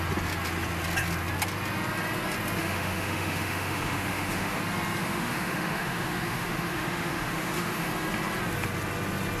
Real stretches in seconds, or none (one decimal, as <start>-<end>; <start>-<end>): 0.0-2.6; 4.6-5.0; 7.9-9.4